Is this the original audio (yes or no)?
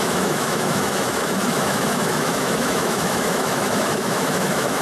no